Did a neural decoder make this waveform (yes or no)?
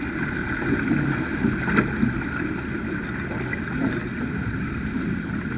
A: no